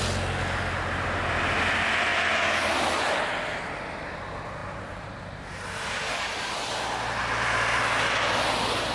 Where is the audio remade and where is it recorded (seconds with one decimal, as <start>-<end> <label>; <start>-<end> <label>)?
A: 0.0-4.6 recorded; 4.6-6.7 remade; 6.7-7.2 recorded; 7.2-7.8 remade; 7.8-8.9 recorded